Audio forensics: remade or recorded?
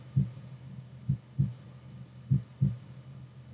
recorded